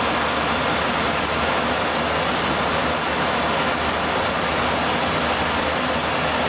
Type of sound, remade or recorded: recorded